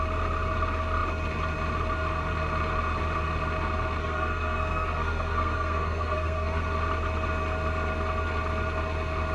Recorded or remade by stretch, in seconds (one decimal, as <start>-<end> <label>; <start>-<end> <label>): 0.0-4.0 recorded; 4.0-6.6 remade; 6.6-9.3 recorded